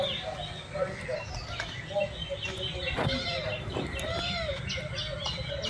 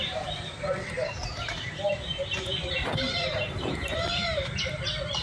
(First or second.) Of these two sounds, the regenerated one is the second